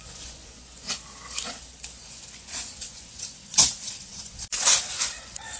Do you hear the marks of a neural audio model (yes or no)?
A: yes